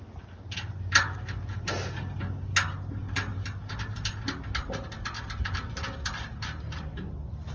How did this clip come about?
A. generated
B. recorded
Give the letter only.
B